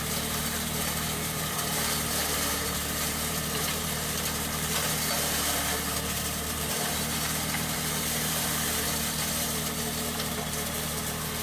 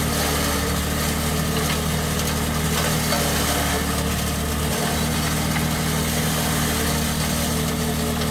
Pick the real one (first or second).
second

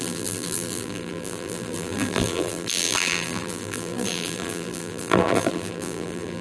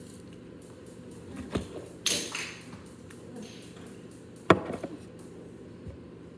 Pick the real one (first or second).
second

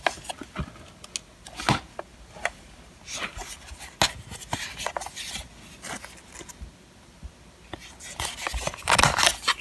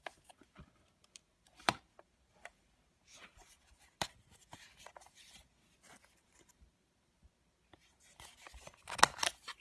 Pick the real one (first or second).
first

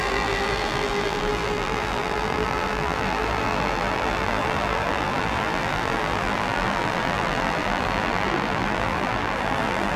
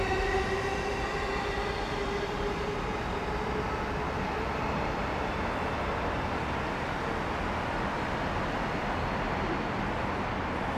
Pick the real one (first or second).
second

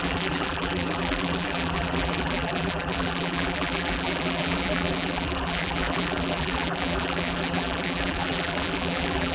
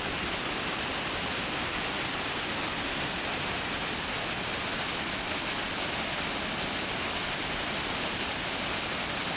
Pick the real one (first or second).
second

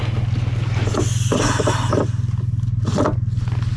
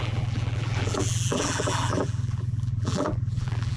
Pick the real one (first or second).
first